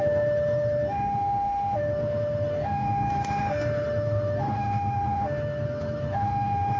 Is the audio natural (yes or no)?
no